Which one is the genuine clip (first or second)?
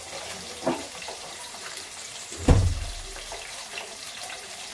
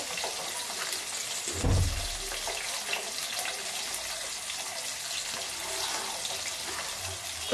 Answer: second